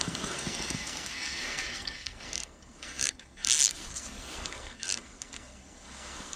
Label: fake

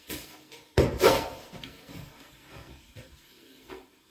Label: fake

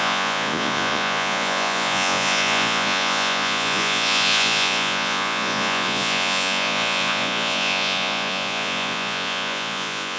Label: fake